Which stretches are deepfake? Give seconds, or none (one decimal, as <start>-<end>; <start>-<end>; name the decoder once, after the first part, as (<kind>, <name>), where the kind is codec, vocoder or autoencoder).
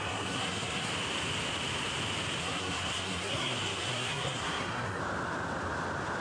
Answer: 0.0-0.9 (codec, SNAC); 2.4-5.0